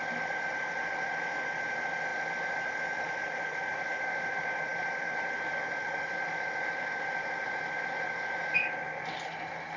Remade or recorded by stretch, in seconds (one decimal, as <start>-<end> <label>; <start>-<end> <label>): 0.0-9.8 recorded